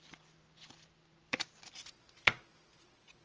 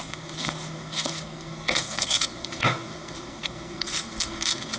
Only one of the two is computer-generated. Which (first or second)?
second